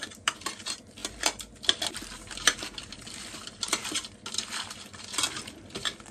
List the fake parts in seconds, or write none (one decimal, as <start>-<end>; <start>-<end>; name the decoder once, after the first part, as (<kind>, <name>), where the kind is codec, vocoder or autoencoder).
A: 0.0-1.0 (vocoder, BigVGAN v2); 2.3-3.8; 5.5-6.1